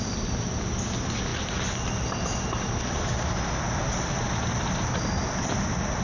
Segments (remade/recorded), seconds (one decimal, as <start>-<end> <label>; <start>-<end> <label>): 0.0-6.0 recorded